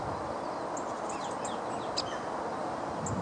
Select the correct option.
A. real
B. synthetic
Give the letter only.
A